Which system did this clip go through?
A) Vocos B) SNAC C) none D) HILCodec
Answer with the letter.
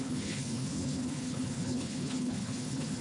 D